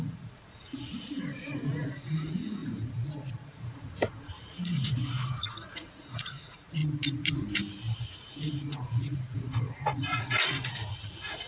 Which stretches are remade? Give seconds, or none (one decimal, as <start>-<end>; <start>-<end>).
0.0-6.8; 8.0-11.5